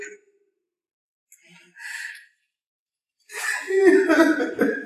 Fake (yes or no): no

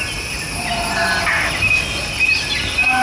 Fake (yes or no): no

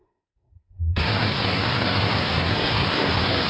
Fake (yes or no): yes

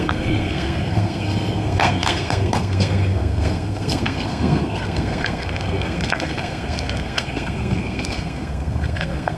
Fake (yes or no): yes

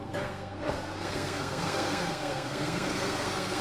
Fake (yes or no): yes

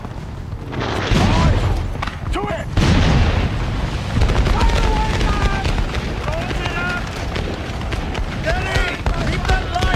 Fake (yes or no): no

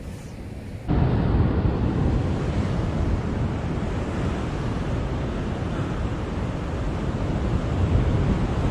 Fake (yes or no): no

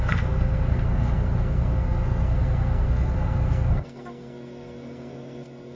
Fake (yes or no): yes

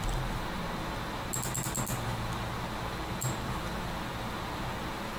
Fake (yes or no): no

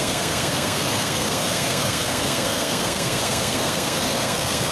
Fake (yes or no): yes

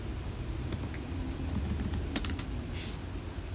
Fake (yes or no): no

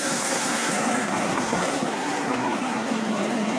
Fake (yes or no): yes